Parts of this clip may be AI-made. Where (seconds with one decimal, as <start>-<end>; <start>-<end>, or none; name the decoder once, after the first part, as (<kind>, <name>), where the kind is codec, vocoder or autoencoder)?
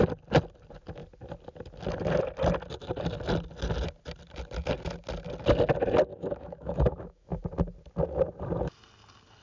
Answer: 6.1-7.4 (autoencoder, DAC-VAE)